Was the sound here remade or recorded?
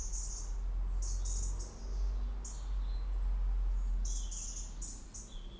recorded